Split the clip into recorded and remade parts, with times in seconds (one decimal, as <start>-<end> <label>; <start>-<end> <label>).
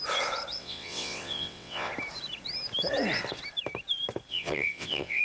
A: 0.0-0.6 recorded; 0.6-1.9 remade; 1.9-4.3 recorded; 4.3-5.2 remade